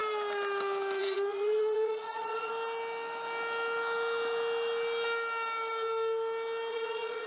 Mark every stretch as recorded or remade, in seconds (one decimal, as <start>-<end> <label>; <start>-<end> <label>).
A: 0.0-1.0 recorded; 1.0-2.5 remade; 2.5-6.7 recorded; 6.7-7.3 remade